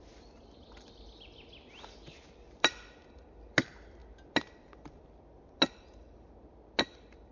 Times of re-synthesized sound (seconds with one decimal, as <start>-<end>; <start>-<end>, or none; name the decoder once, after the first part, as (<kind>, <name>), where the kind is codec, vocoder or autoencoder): none